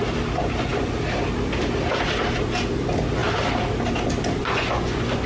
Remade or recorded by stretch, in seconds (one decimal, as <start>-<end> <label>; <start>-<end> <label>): 0.0-4.4 recorded; 4.4-5.3 remade